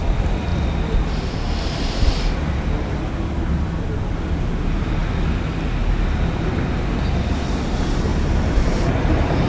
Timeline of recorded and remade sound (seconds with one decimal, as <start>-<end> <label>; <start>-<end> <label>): 0.0-8.1 recorded; 8.1-9.5 remade